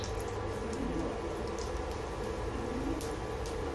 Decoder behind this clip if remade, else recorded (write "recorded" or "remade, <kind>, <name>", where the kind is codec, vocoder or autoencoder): recorded